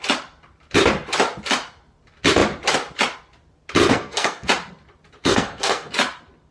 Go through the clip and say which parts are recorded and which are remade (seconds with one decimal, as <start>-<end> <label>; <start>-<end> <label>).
0.0-3.8 recorded; 3.8-4.5 remade; 4.5-5.2 recorded; 5.2-5.9 remade; 5.9-6.5 recorded